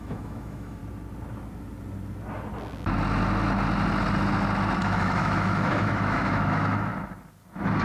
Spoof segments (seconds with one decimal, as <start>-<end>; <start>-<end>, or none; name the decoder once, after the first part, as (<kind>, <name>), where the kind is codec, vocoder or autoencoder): 0.0-0.8 (autoencoder, DAC-VAE); 4.8-6.9

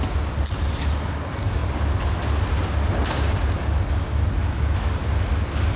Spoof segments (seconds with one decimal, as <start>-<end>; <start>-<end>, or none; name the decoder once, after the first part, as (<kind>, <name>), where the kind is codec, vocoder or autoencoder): 4.4-4.9 (autoencoder, DAC-VAE)

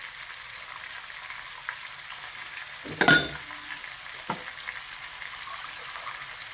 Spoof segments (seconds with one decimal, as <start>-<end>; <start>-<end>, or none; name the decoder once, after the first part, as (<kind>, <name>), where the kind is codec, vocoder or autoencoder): none

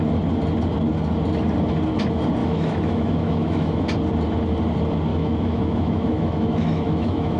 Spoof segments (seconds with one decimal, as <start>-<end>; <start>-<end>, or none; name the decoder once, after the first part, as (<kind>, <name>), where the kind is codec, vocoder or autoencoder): 2.4-3.8 (autoencoder, DAC-VAE); 5.1-7.4

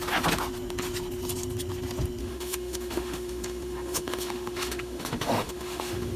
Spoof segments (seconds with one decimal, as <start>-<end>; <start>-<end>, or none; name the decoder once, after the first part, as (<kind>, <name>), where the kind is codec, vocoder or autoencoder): 2.2-6.2 (autoencoder, DAC-VAE)

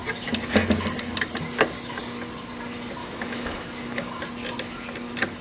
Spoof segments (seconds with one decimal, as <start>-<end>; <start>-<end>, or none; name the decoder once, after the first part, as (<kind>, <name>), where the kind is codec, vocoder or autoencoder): 3.0-4.2 (autoencoder, DAC-VAE)